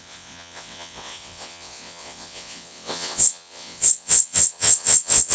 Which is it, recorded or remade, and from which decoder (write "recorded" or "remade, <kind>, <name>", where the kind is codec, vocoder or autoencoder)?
remade, vocoder, WaveNeXt